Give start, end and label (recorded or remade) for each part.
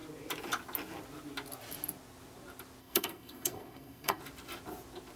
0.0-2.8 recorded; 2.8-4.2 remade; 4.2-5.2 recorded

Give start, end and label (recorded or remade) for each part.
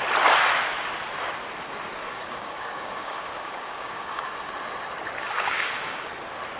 0.0-2.0 recorded; 2.0-4.5 remade; 4.5-5.2 recorded; 5.2-6.1 remade; 6.1-6.6 recorded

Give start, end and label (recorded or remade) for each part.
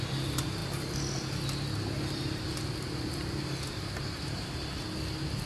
0.0-5.5 recorded